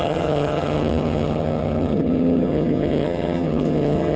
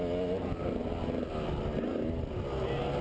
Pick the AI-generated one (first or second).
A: first